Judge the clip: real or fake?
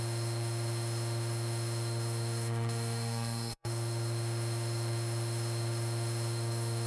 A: fake